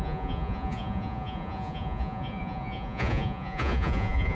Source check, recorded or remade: remade